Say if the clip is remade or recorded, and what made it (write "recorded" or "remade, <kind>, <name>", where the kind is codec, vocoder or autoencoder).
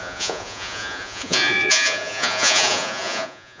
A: remade, vocoder, Vocos